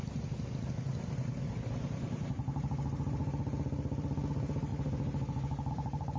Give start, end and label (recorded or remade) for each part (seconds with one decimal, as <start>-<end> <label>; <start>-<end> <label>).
0.0-2.3 recorded; 2.3-3.2 remade; 3.2-4.3 recorded; 4.3-4.7 remade; 4.7-5.7 recorded; 5.7-6.2 remade